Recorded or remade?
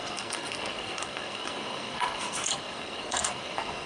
remade